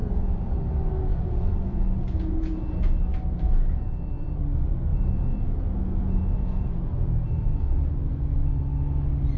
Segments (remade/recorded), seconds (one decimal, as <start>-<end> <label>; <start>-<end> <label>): 0.0-0.6 remade; 0.6-1.1 recorded; 1.1-2.7 remade; 2.7-4.9 recorded; 4.9-7.9 remade; 7.9-9.4 recorded